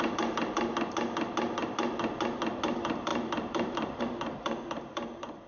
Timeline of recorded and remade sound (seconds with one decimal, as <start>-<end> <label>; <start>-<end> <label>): 0.0-0.7 remade; 0.7-2.7 recorded; 2.7-5.5 remade